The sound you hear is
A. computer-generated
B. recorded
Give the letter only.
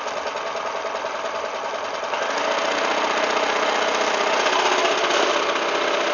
B